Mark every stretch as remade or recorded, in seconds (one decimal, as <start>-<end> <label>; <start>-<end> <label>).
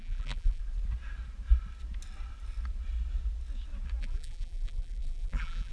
0.0-0.6 remade; 0.6-4.0 recorded; 4.0-5.7 remade